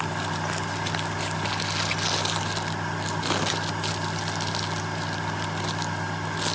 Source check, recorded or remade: recorded